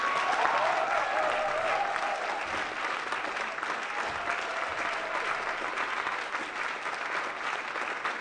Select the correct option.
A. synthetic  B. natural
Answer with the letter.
B